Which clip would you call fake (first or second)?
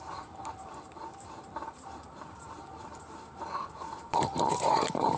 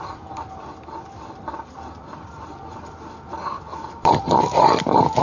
first